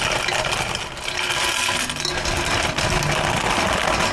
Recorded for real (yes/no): yes